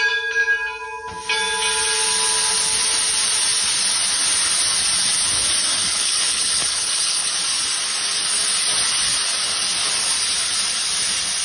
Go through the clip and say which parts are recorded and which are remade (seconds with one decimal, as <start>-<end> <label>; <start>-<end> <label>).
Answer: 0.0-5.8 recorded; 5.8-7.3 remade; 7.3-11.4 recorded